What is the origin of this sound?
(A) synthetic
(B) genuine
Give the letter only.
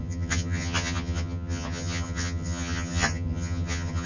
A